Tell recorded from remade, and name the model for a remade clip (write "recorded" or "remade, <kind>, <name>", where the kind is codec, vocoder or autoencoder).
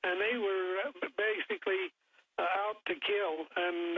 recorded